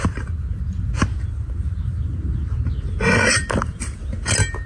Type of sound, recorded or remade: recorded